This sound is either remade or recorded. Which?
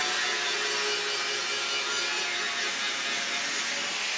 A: recorded